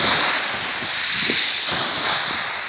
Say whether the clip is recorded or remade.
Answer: recorded